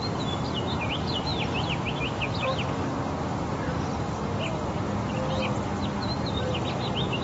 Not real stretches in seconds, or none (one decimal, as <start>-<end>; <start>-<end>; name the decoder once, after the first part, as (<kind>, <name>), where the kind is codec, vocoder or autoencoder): none